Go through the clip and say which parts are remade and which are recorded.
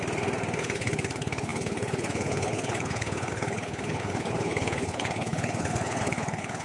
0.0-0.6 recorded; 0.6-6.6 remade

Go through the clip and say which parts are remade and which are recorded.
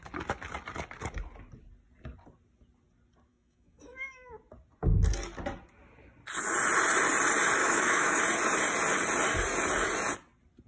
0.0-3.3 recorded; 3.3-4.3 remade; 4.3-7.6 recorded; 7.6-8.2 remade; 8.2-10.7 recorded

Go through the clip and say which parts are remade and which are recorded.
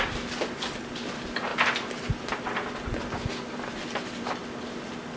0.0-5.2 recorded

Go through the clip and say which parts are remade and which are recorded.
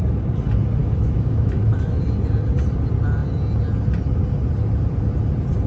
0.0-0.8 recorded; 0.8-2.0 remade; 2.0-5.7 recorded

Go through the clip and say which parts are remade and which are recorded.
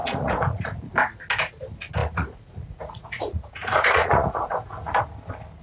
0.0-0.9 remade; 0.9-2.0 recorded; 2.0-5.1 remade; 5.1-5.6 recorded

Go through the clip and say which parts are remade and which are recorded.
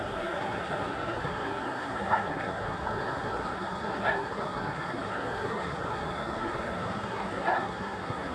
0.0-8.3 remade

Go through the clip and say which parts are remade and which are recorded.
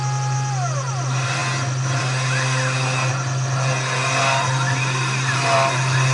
0.0-6.1 recorded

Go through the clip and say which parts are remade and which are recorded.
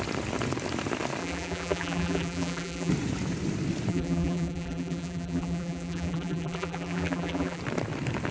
0.0-1.2 recorded; 1.2-2.9 remade; 2.9-3.9 recorded; 3.9-7.6 remade; 7.6-8.3 recorded